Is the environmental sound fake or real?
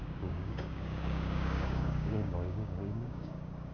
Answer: fake